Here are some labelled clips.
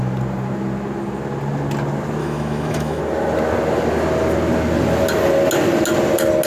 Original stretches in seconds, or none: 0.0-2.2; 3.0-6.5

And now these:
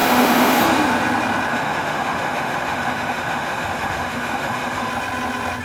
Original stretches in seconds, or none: 0.6-1.5; 4.9-5.6

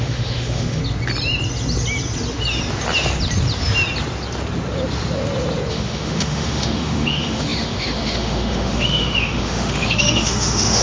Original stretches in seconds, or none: 0.8-5.7

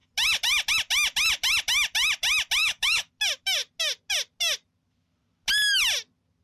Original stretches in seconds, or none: 0.0-2.6; 3.1-6.4

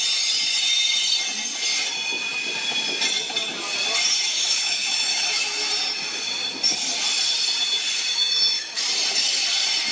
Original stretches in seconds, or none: 0.0-4.3; 5.7-8.1; 8.8-9.9

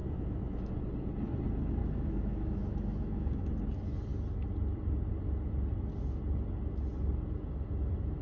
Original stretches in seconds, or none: 0.7-1.8; 3.5-8.2